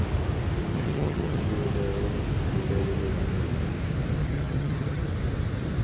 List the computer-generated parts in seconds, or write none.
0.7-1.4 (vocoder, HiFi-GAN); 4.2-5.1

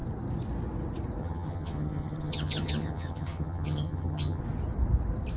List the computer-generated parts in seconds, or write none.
1.2-4.4 (vocoder, HiFi-GAN)

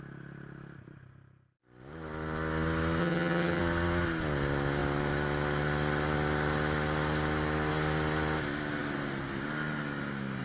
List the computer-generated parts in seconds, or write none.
3.0-3.6 (vocoder, HiFi-GAN)

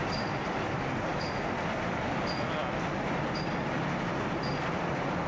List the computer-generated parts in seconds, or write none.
none

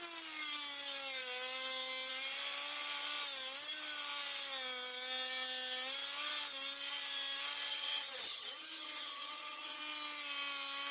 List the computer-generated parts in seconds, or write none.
7.7-9.8 (vocoder, HiFi-GAN)

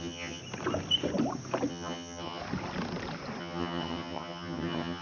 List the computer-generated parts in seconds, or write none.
0.0-0.4 (vocoder, HiFi-GAN); 1.7-2.4; 3.4-5.0